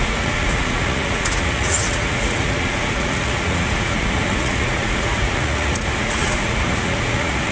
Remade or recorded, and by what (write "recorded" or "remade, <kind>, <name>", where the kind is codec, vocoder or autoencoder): remade, vocoder, Vocos